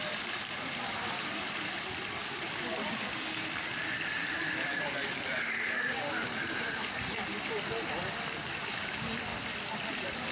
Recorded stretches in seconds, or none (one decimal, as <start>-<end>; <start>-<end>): 0.0-10.3